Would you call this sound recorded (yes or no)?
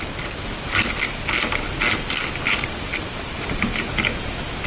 yes